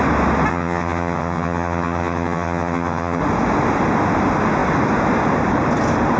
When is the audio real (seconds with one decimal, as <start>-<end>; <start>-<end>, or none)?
0.0-0.5; 3.2-6.2